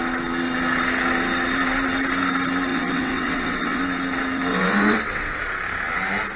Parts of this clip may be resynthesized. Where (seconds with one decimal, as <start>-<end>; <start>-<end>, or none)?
2.7-3.8; 4.5-5.4

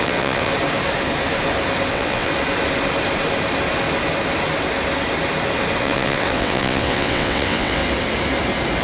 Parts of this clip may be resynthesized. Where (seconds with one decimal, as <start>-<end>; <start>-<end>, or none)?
0.0-0.5; 1.9-2.3; 5.8-7.8

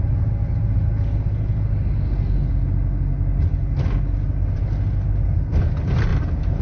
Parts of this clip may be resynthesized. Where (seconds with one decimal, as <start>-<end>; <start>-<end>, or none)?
none

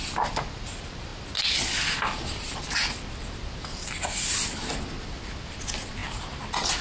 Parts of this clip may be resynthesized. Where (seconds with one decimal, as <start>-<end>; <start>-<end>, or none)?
none